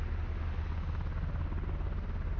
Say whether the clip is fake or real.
real